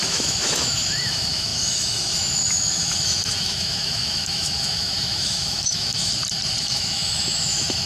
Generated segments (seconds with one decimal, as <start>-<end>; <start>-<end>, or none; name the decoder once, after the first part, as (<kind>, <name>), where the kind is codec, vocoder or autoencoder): 0.0-6.1 (autoencoder, DAC-VAE); 6.6-7.9